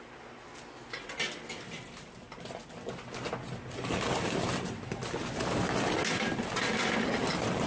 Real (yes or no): yes